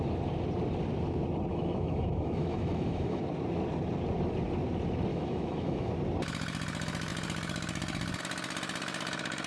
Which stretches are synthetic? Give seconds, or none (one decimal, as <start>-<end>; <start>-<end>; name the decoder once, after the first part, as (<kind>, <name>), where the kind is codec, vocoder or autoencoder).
1.5-3.2 (autoencoder, DAC-VAE); 5.1-5.9